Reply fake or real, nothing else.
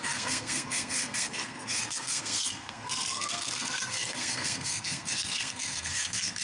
fake